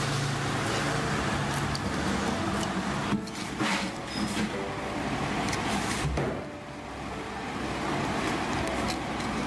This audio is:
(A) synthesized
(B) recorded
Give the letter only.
B